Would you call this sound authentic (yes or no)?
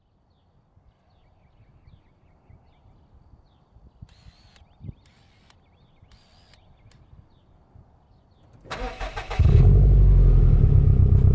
yes